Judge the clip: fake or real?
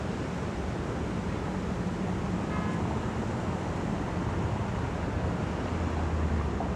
real